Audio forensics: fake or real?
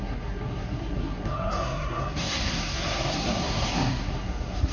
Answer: fake